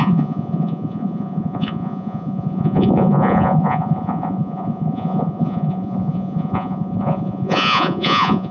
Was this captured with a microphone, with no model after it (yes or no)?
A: no